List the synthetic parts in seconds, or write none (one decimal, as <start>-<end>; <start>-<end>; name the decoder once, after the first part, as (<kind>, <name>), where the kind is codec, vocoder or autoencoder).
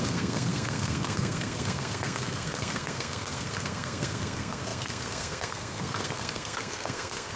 0.0-7.4 (codec, SNAC)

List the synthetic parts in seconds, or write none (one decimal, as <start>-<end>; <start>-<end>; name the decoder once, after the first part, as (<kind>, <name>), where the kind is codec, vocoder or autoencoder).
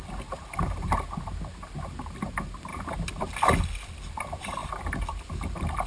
none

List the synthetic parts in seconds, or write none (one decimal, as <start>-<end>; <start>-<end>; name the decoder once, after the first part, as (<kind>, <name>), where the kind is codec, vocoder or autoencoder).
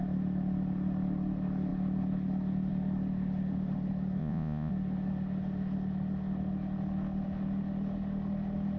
4.2-4.7 (vocoder, Vocos)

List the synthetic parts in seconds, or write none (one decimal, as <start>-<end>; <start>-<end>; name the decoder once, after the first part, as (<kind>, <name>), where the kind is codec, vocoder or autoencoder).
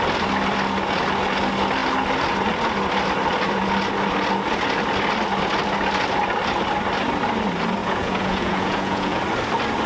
7.8-9.2 (vocoder, Vocos)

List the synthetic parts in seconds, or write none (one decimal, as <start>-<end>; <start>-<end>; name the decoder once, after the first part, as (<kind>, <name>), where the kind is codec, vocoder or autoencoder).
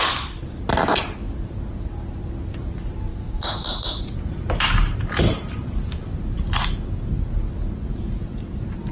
3.1-4.0 (autoencoder, DAC-VAE)